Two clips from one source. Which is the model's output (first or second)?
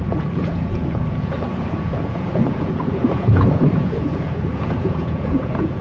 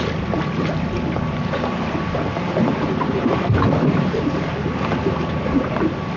first